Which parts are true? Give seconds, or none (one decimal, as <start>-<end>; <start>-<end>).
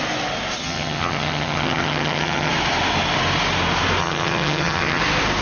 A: 0.0-0.6; 2.5-4.0; 5.0-5.4